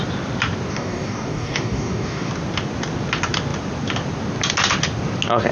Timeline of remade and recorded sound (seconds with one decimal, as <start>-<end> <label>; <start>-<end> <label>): 0.0-0.7 recorded; 0.7-2.3 remade; 2.3-5.5 recorded